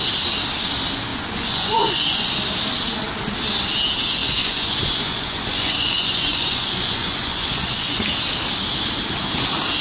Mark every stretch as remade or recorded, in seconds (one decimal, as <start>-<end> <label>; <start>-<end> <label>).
0.0-1.1 recorded; 1.1-2.3 remade; 2.3-4.2 recorded; 4.2-8.0 remade; 8.0-9.8 recorded